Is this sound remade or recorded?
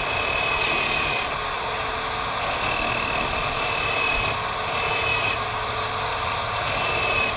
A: recorded